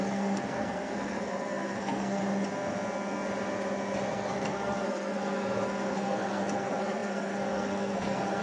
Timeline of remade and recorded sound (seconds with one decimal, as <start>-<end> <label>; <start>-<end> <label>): 0.0-2.2 remade; 2.2-4.1 recorded; 4.1-8.4 remade